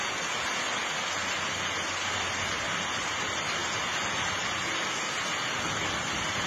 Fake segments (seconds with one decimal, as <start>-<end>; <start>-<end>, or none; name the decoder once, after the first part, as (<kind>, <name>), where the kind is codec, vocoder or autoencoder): none